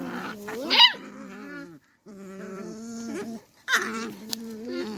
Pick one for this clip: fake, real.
fake